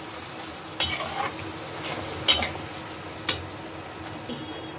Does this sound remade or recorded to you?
recorded